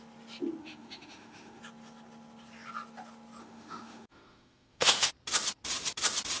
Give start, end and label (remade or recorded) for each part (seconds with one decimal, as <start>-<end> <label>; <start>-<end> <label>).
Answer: 0.0-0.6 recorded; 0.6-1.6 remade; 1.6-3.4 recorded; 3.4-5.1 remade; 5.1-6.4 recorded